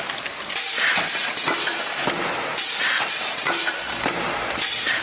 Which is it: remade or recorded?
recorded